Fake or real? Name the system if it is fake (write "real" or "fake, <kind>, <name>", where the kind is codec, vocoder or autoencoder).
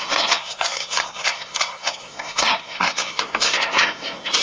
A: fake, codec, SNAC